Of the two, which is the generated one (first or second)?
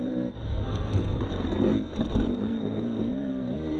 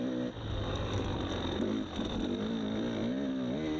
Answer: first